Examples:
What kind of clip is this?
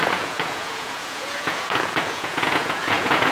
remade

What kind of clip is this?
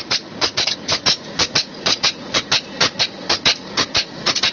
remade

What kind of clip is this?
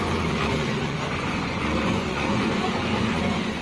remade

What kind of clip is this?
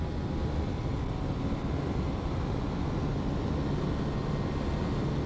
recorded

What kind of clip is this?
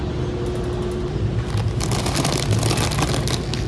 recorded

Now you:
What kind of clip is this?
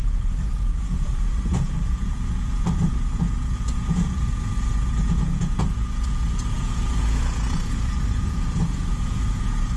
remade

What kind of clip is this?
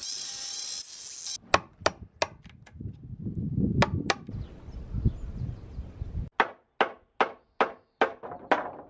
recorded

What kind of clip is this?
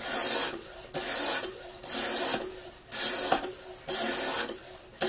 recorded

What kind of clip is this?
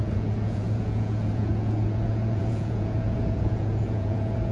remade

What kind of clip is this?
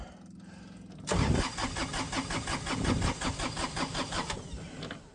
recorded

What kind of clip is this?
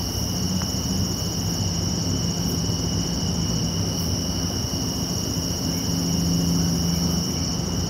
recorded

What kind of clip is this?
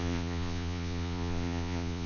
remade